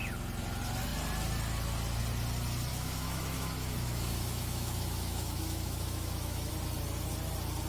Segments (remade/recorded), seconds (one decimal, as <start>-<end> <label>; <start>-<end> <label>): 0.0-2.7 recorded; 2.7-6.5 remade; 6.5-7.7 recorded